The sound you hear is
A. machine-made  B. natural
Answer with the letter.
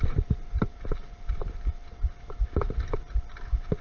B